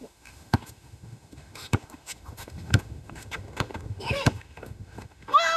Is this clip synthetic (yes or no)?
yes